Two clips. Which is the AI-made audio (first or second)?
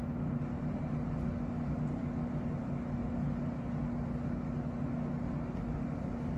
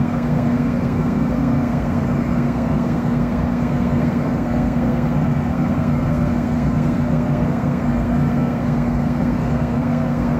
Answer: second